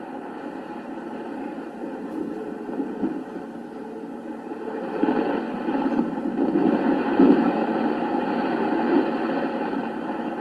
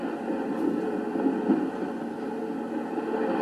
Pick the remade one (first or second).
first